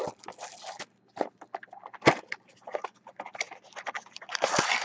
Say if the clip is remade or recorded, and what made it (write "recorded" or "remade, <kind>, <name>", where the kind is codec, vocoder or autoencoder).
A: recorded